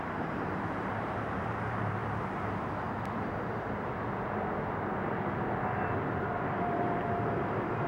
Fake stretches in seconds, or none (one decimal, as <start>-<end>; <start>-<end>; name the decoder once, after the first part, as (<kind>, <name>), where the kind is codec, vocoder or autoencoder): 0.0-2.0 (vocoder, BigVGAN v2); 6.3-7.9